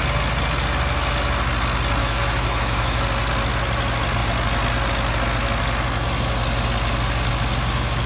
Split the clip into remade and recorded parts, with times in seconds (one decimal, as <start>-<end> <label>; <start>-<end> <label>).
0.0-2.0 recorded; 2.0-3.0 remade; 3.0-8.1 recorded